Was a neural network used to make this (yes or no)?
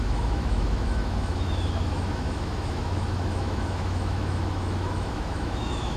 yes